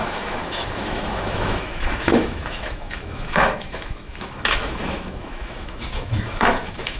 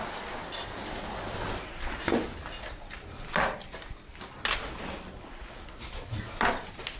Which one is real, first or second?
second